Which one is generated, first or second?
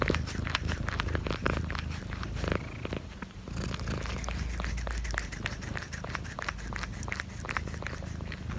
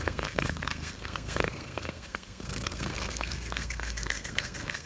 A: second